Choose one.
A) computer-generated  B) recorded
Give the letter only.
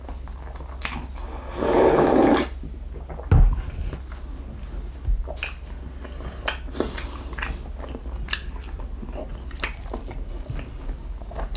B